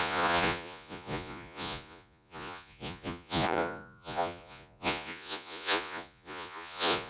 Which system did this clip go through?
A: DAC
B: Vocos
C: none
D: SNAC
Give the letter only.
B